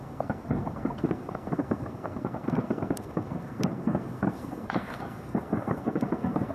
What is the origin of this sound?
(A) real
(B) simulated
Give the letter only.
B